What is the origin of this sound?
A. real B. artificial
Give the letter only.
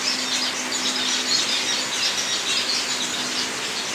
A